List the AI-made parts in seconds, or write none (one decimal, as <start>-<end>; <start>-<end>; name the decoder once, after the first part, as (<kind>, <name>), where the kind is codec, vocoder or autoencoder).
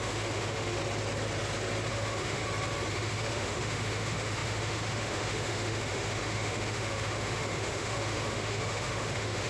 0.0-0.8 (autoencoder, DAC-VAE); 1.9-2.4; 2.9-9.5